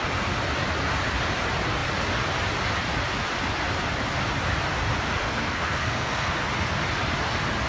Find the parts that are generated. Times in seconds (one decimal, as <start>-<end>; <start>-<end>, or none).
5.2-6.4